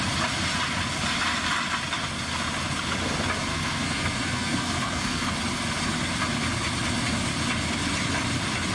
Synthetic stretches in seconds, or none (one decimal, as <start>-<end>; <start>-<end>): 3.5-5.3